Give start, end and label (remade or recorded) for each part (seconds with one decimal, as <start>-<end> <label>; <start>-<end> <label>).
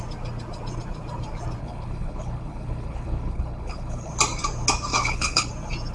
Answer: 0.0-1.6 recorded; 1.6-4.1 remade; 4.1-4.9 recorded; 4.9-5.5 remade; 5.5-5.9 recorded